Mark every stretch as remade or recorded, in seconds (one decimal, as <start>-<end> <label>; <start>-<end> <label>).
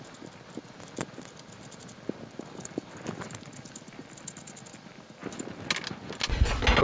0.0-6.8 recorded